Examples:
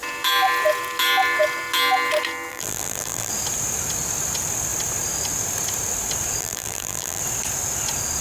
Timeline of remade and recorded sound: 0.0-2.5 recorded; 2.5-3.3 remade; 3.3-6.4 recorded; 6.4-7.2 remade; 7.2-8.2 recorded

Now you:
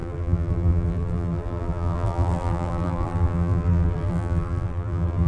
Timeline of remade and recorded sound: 0.0-5.3 remade

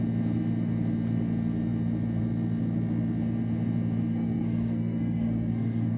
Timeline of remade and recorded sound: 0.0-4.1 recorded; 4.1-6.0 remade